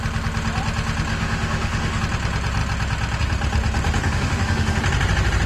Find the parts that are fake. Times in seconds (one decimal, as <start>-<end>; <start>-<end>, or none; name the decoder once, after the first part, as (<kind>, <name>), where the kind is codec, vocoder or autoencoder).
1.1-2.0 (autoencoder, DAC-VAE); 4.0-4.8